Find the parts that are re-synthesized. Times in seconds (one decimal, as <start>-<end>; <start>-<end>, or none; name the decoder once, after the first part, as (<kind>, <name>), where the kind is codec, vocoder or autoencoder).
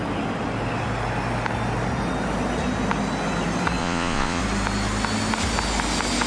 3.8-4.4 (vocoder, Vocos)